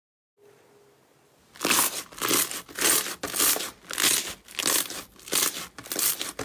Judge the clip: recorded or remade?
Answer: recorded